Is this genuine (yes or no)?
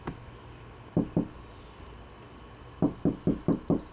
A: yes